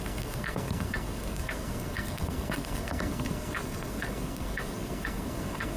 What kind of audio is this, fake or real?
fake